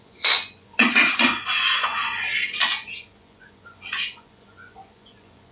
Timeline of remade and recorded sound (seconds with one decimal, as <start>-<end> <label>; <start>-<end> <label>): 0.0-5.5 remade